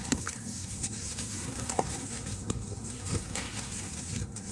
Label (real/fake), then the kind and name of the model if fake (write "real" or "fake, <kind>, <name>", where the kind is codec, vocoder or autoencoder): fake, codec, SNAC